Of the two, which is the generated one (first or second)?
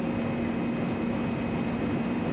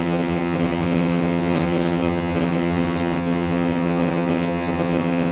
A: second